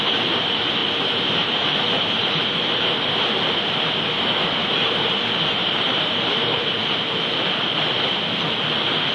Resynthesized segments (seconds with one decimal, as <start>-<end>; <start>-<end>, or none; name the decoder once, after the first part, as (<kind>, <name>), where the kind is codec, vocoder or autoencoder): 0.8-3.1 (vocoder, BigVGAN v2); 4.6-7.3